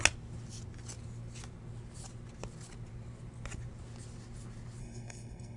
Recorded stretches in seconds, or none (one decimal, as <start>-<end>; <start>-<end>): 0.0-4.8